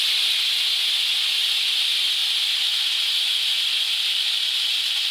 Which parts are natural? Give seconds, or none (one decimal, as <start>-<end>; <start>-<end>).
0.0-5.1